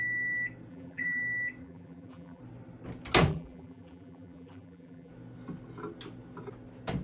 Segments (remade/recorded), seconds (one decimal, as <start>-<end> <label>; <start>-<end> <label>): 0.0-0.7 recorded; 0.7-1.2 remade; 1.2-1.6 recorded; 1.6-2.4 remade; 2.4-3.3 recorded; 3.3-5.1 remade; 5.1-7.0 recorded